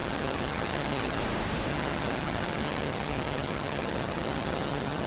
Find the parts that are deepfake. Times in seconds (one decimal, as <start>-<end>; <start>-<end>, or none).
0.0-1.2; 1.7-5.1